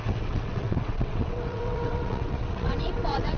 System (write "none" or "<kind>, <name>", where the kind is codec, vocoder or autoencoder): vocoder, WaveNeXt